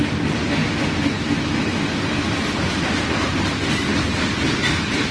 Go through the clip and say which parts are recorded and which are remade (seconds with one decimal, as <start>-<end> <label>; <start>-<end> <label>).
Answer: 0.0-5.1 recorded